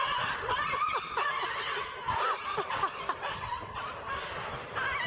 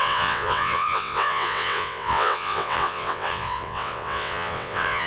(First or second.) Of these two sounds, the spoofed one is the second